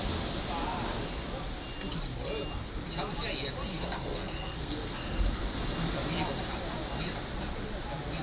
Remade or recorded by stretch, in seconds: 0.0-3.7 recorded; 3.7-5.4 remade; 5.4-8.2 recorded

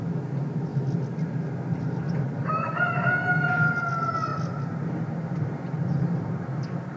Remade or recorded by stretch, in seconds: 0.0-7.0 recorded